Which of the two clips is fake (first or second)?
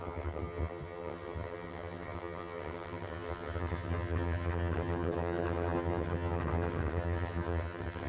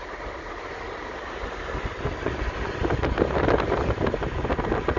first